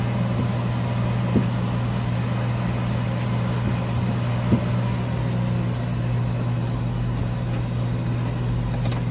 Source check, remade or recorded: recorded